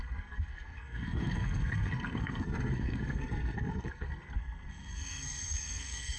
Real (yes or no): no